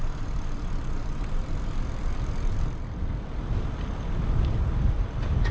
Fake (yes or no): no